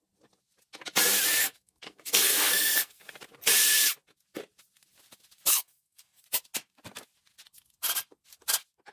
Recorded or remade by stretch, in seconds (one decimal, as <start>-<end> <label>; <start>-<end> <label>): 0.0-1.4 recorded; 1.4-3.1 remade; 3.1-5.5 recorded; 5.5-6.2 remade; 6.2-8.9 recorded